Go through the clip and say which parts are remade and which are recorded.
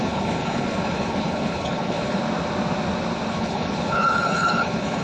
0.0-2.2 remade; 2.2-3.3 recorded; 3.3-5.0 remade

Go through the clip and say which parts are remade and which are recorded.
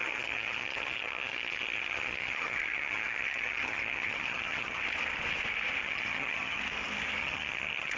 0.0-4.8 remade; 4.8-5.8 recorded; 5.8-6.6 remade; 6.6-7.2 recorded; 7.2-8.0 remade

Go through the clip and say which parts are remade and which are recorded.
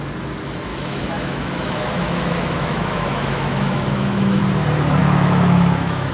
0.0-0.7 recorded; 0.7-4.4 remade; 4.4-5.0 recorded; 5.0-6.1 remade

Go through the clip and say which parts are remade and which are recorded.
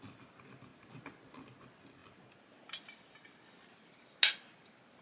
0.0-5.0 recorded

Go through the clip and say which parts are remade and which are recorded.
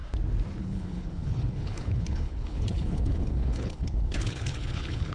0.0-0.6 recorded; 0.6-5.1 remade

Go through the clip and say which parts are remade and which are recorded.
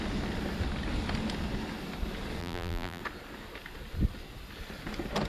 0.0-2.4 recorded; 2.4-3.0 remade; 3.0-5.3 recorded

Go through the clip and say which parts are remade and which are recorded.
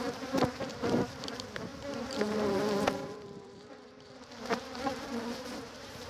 0.0-6.1 remade